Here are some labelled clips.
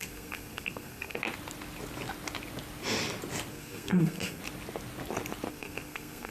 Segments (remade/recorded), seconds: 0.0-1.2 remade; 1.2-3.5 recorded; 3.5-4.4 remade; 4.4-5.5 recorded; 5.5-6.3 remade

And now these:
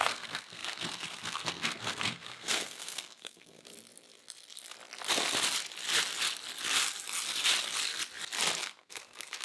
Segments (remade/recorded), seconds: 0.0-3.7 remade; 3.7-8.6 recorded; 8.6-9.4 remade

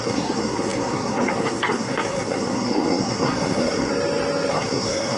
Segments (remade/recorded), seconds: 0.0-3.9 remade; 3.9-4.5 recorded; 4.5-5.2 remade

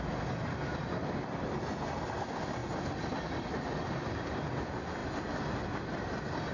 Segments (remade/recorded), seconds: 0.0-6.5 recorded

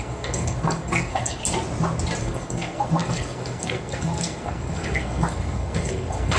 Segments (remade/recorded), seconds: 0.0-1.4 remade; 1.4-2.2 recorded; 2.2-6.4 remade

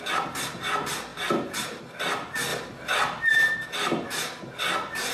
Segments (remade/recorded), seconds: 0.0-5.1 recorded